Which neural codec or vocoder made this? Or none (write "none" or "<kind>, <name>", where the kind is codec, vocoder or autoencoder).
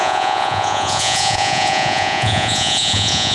vocoder, Vocos